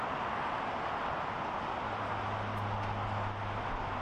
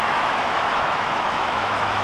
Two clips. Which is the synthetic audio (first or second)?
second